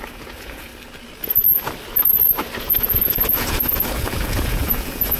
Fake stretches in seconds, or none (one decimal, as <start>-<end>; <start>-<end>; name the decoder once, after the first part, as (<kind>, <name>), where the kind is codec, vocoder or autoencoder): 0.0-0.7 (vocoder, Vocos); 2.6-5.2